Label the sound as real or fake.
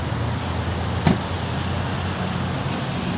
real